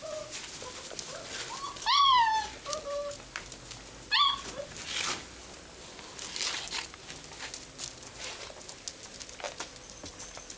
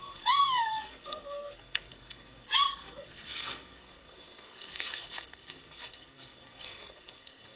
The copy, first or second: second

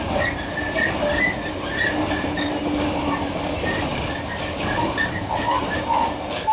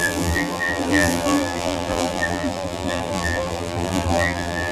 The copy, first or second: second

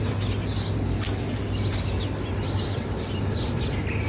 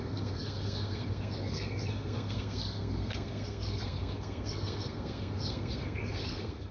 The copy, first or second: second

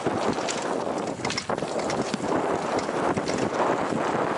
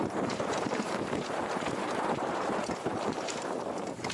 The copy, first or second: second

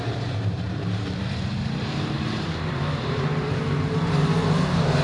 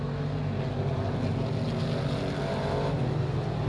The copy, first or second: first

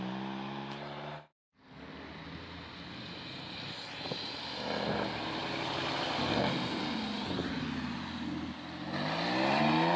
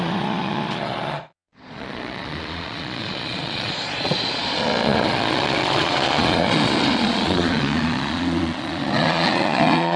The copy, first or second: second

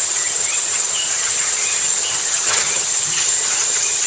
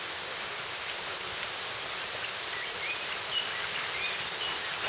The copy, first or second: first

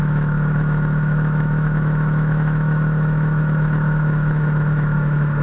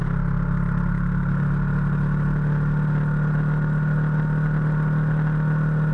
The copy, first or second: first